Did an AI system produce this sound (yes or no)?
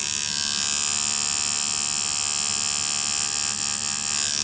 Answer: no